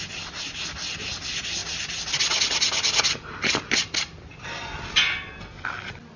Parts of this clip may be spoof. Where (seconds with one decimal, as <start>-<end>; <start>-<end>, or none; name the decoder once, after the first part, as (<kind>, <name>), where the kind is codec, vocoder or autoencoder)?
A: none